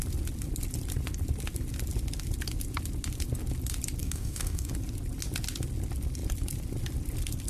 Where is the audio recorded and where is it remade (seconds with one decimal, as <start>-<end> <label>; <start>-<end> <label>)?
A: 0.0-4.0 recorded; 4.0-4.7 remade; 4.7-7.5 recorded